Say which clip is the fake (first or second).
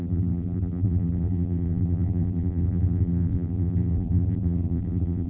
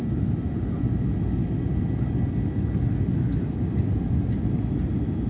first